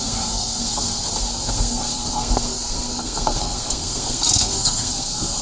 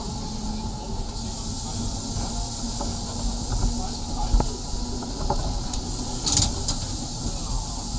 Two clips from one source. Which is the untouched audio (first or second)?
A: second